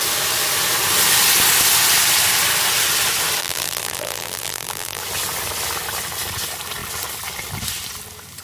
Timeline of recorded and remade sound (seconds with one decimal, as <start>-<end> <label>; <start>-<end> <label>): 0.0-3.4 recorded; 3.4-5.0 remade; 5.0-8.4 recorded